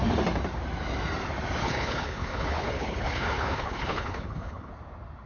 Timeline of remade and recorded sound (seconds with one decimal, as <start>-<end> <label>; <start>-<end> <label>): 0.0-1.6 recorded; 1.6-4.7 remade; 4.7-5.3 recorded